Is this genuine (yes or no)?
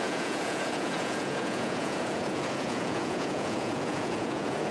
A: no